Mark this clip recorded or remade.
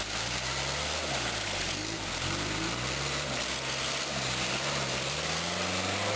recorded